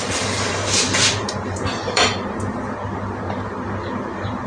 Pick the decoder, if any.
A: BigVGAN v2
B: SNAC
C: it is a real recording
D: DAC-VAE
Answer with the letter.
A